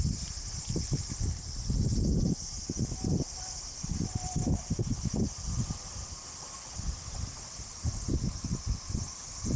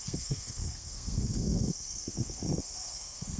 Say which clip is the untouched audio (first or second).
first